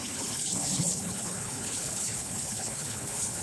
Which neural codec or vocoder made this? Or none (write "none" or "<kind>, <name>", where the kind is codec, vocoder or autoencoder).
codec, HILCodec